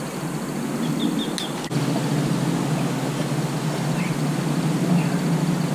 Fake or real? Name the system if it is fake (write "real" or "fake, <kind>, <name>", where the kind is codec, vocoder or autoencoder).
real